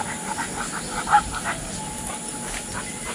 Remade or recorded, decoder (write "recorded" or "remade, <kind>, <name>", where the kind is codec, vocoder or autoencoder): recorded